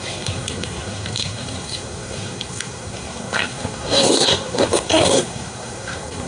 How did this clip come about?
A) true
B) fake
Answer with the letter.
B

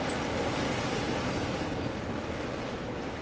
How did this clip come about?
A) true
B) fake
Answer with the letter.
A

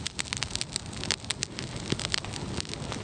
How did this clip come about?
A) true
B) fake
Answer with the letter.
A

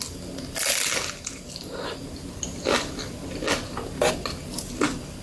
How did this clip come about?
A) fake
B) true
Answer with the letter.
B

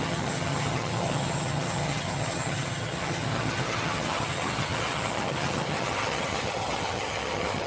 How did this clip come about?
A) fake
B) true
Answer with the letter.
A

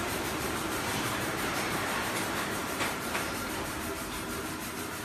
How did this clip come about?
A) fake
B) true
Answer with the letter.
A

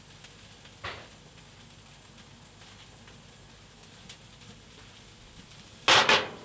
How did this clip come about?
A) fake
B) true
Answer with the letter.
B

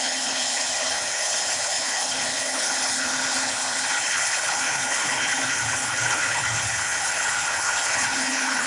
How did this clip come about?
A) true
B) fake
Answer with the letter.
B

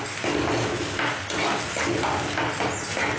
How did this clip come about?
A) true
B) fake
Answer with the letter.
A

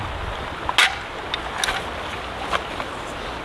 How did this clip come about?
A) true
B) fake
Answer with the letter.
A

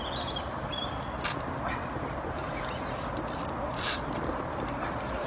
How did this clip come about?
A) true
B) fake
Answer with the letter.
A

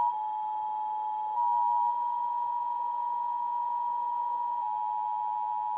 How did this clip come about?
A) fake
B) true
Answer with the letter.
B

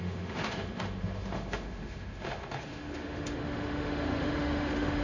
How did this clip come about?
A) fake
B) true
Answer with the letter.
A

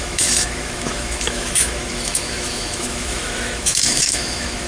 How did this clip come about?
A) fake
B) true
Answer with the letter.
A